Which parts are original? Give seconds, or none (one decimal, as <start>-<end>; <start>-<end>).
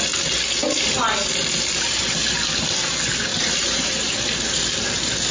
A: 0.0-3.3; 4.2-5.3